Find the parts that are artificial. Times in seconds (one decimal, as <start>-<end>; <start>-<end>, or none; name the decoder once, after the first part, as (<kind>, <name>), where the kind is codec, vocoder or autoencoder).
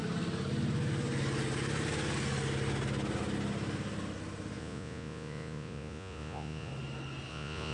4.6-6.7 (vocoder, Vocos); 7.3-7.7